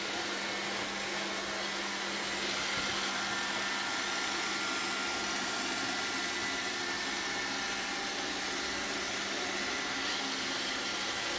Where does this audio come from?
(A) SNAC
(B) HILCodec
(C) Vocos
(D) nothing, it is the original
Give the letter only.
D